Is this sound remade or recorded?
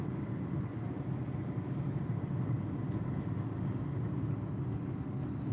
recorded